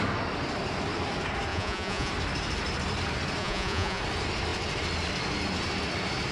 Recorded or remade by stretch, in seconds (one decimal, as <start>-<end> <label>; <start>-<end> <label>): 0.0-1.5 recorded; 1.5-2.1 remade; 2.1-3.4 recorded; 3.4-4.0 remade; 4.0-6.3 recorded